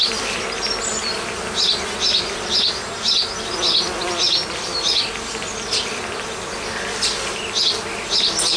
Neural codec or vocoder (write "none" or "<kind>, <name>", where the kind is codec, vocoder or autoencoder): none